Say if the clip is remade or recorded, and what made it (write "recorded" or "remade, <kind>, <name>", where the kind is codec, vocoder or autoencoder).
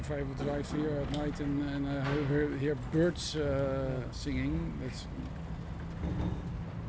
recorded